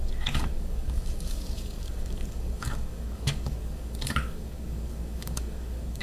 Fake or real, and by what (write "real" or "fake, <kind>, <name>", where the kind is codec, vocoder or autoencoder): fake, codec, DAC